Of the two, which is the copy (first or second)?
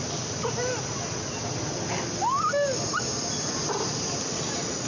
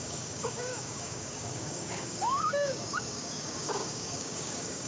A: second